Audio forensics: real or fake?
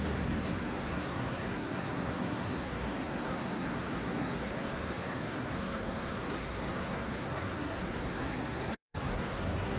fake